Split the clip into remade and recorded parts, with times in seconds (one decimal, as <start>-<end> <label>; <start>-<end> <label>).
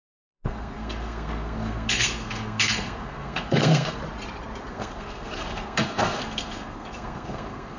0.0-4.0 remade; 4.0-4.7 recorded; 4.7-7.8 remade